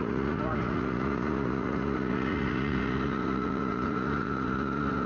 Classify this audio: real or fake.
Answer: fake